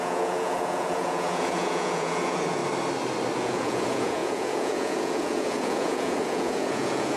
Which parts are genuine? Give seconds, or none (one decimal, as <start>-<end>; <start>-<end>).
2.6-3.4